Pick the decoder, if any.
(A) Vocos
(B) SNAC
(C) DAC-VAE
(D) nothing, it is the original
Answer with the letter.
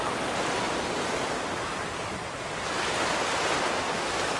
D